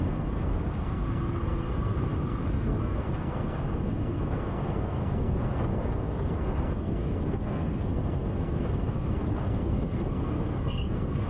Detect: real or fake fake